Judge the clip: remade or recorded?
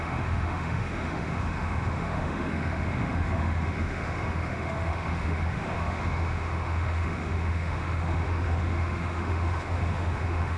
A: remade